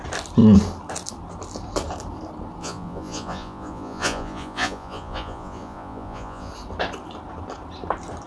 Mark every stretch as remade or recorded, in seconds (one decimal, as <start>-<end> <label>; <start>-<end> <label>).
0.0-2.6 recorded; 2.6-6.5 remade; 6.5-8.3 recorded